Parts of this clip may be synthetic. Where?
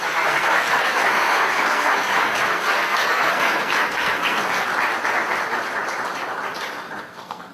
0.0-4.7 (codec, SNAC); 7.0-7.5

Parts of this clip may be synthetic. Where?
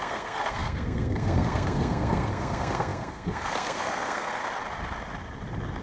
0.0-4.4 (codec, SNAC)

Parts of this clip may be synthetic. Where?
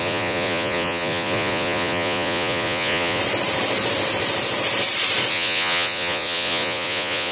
0.0-3.2 (vocoder, Vocos); 5.3-7.3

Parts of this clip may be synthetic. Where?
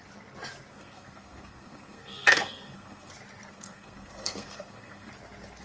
0.7-3.1 (codec, SNAC); 3.5-5.1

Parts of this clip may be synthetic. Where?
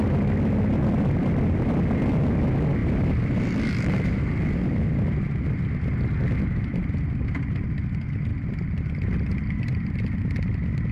0.8-2.2 (vocoder, BigVGAN v2); 2.8-5.3; 8.3-10.0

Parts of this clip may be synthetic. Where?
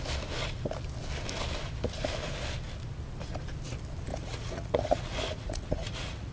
4.1-6.3 (vocoder, Vocos)